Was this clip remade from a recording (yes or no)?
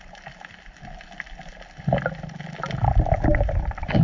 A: no